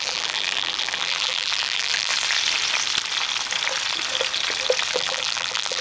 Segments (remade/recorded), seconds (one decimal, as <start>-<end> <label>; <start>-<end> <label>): 0.0-2.1 remade; 2.1-4.9 recorded; 4.9-5.8 remade